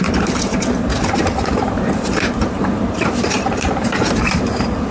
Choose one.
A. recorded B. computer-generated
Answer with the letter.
B